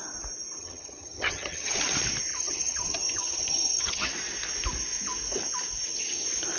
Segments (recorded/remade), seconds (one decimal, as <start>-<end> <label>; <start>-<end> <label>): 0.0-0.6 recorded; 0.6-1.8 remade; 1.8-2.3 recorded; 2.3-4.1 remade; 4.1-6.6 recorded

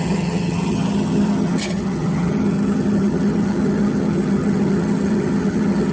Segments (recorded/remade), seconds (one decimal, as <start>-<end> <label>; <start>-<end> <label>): 0.0-5.9 remade

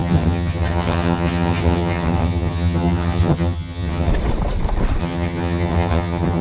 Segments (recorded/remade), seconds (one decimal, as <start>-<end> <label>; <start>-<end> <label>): 0.0-4.1 remade; 4.1-5.0 recorded; 5.0-6.4 remade